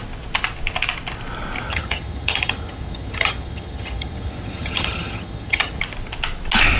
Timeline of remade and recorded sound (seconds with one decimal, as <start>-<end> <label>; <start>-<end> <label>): 0.0-1.7 recorded; 1.7-5.8 remade; 5.8-6.8 recorded